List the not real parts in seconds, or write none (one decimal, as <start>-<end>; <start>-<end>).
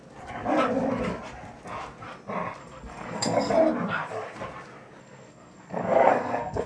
2.6-3.5; 5.0-6.7